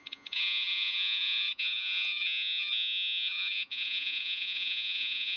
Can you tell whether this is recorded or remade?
remade